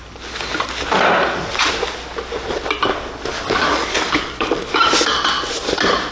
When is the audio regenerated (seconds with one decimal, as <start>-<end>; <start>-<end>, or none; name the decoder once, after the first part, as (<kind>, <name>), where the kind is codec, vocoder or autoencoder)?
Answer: 3.3-4.7 (codec, DAC)